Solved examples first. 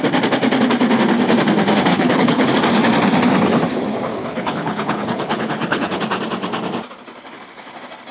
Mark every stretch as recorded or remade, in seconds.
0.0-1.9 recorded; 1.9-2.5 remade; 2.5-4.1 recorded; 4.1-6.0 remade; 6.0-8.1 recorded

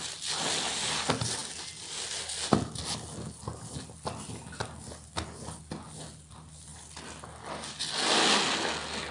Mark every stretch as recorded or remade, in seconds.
0.0-9.1 recorded

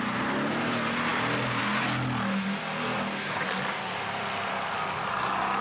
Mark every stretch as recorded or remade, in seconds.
0.0-5.6 recorded

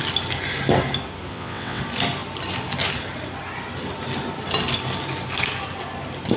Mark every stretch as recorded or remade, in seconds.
0.0-1.3 recorded; 1.3-1.8 remade; 1.8-6.4 recorded

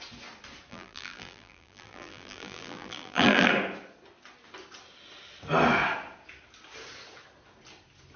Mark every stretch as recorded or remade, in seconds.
0.0-0.7 recorded; 0.7-3.5 remade; 3.5-8.2 recorded

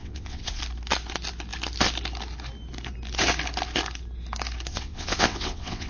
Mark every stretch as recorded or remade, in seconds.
0.0-0.6 remade; 0.6-4.7 recorded; 4.7-5.9 remade

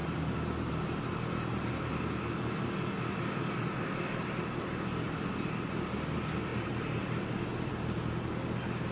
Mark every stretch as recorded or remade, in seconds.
0.0-6.5 recorded; 6.5-7.7 remade; 7.7-8.9 recorded